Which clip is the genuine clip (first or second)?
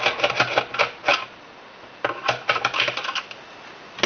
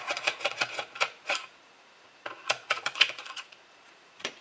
first